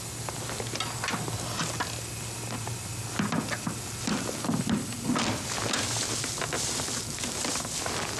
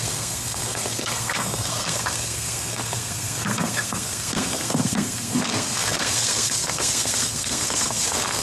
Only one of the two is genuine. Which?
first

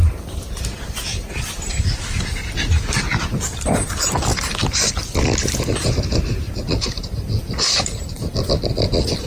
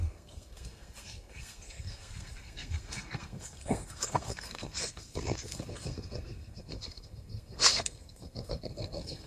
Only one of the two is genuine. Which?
first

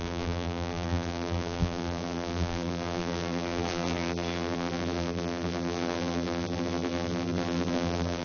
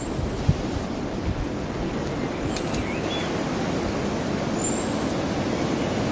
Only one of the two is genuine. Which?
second